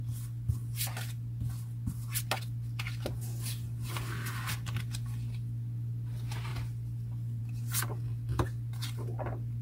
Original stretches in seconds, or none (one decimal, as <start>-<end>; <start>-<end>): 0.0-9.6

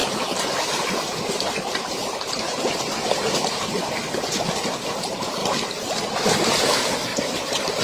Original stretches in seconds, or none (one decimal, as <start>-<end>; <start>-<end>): 4.1-7.1

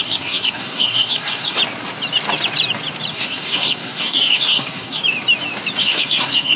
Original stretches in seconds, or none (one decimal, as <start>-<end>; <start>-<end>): 1.6-3.1; 5.0-5.8

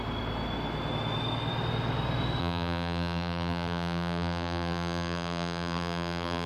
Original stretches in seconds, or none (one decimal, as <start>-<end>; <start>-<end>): 0.0-2.4

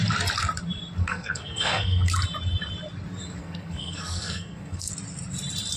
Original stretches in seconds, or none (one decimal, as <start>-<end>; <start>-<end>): 0.0-1.0; 2.1-3.4; 4.9-5.8

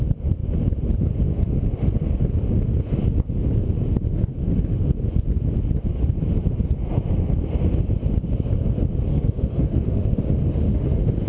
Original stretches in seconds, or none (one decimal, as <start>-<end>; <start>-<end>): 0.0-9.1; 10.2-10.7